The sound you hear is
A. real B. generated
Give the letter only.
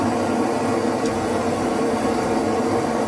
A